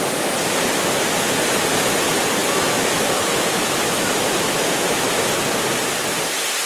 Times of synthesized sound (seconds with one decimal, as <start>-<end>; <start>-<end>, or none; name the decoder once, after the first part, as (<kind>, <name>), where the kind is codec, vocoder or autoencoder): 2.4-5.1 (autoencoder, DAC-VAE)